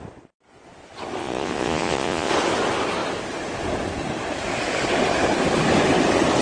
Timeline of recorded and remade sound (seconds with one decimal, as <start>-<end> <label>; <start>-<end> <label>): 0.0-1.2 recorded; 1.2-2.3 remade; 2.3-6.4 recorded